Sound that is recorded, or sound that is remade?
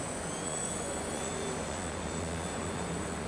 remade